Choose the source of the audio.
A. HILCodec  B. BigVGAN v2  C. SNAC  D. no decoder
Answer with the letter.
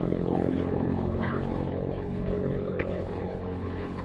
A